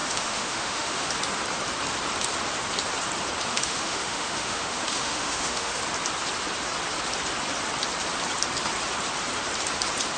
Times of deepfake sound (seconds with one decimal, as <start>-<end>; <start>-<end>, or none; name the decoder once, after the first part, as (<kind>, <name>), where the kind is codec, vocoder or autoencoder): 0.0-1.1 (autoencoder, DAC-VAE); 3.5-5.8